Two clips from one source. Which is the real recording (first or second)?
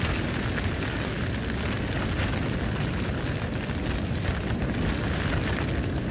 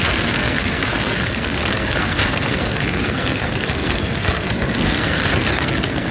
first